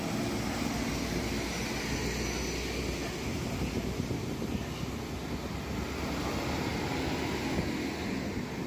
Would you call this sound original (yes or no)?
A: yes